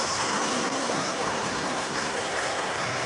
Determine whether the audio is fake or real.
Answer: fake